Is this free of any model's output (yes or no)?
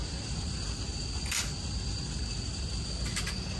yes